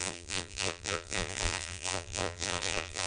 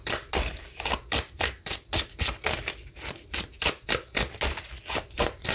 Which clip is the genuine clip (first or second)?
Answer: second